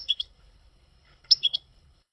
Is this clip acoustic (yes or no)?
no